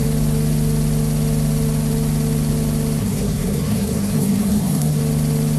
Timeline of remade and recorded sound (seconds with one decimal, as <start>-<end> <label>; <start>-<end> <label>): 0.0-3.0 recorded; 3.0-5.0 remade; 5.0-5.6 recorded